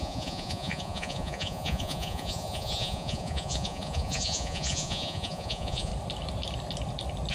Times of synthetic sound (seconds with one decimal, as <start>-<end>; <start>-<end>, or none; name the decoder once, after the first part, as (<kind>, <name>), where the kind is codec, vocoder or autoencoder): 0.0-5.9 (vocoder, Vocos)